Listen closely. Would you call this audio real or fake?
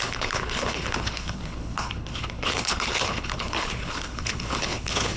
fake